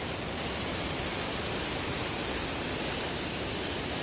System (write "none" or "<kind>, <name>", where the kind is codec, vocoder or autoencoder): none